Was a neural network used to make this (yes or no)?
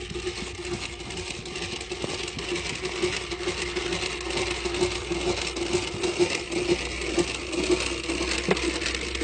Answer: no